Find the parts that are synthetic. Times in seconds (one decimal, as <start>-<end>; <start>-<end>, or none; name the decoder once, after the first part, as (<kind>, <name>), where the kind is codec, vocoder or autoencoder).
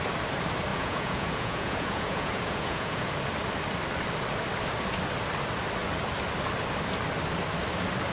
0.7-3.1 (vocoder, Vocos)